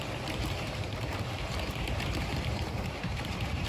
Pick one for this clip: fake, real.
fake